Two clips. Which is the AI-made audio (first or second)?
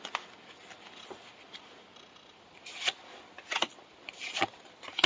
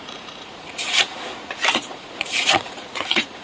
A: second